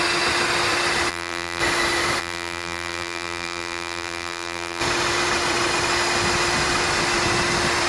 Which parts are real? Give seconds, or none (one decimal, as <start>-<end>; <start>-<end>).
0.0-1.1; 1.6-2.2; 4.8-7.9